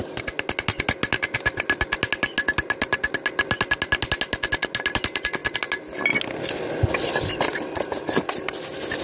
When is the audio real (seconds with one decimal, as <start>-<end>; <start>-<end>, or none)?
0.0-9.0